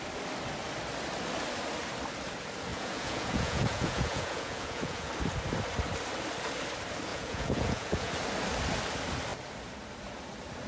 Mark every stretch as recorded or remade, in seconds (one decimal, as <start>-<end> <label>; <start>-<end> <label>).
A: 0.0-2.7 recorded; 2.7-5.1 remade; 5.1-7.1 recorded; 7.1-8.1 remade; 8.1-10.7 recorded